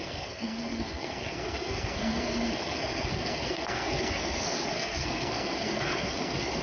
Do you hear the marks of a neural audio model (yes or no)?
yes